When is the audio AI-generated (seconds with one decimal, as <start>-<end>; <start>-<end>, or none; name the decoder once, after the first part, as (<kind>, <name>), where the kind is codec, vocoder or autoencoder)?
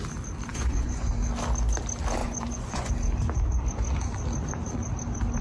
0.5-1.1 (vocoder, Vocos); 2.2-2.9